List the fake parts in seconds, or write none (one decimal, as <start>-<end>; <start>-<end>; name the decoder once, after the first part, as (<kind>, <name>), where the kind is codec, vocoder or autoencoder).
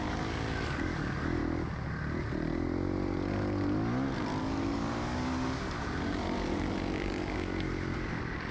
0.0-1.4 (codec, DAC); 4.4-8.5